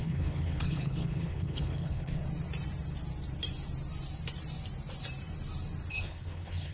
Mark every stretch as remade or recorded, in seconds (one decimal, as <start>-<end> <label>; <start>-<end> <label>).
0.0-2.2 remade; 2.2-5.9 recorded; 5.9-6.7 remade